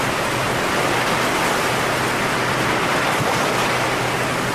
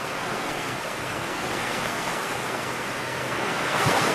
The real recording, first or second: first